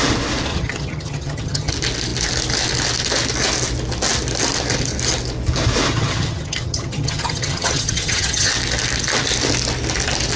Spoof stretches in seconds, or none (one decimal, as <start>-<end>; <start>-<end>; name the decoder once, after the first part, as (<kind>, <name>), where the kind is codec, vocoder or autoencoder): 0.5-1.7 (vocoder, HiFi-GAN); 5.9-8.5